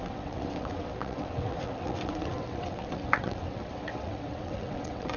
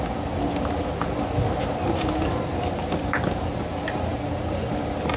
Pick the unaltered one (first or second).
second